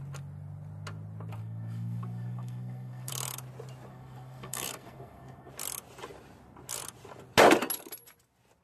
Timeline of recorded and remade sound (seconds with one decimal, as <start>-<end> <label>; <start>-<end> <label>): 0.0-1.4 recorded; 1.4-3.1 remade; 3.1-3.9 recorded; 3.9-5.5 remade; 5.5-8.6 recorded